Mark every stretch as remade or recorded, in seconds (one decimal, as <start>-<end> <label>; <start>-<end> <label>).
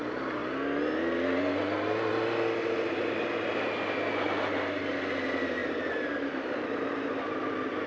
0.0-5.6 recorded; 5.6-6.8 remade; 6.8-7.9 recorded